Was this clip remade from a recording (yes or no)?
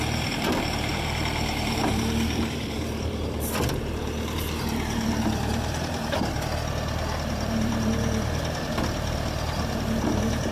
yes